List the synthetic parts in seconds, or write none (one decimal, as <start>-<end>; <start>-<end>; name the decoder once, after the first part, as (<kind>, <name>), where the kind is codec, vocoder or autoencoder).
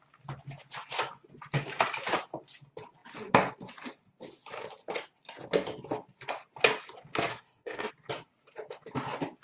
7.3-7.9 (codec, SNAC)